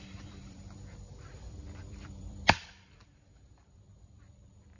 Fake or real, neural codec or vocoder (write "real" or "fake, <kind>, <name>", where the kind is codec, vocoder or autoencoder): fake, vocoder, BigVGAN v2